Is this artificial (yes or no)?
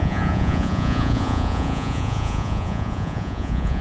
yes